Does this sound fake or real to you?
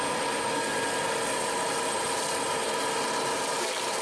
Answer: real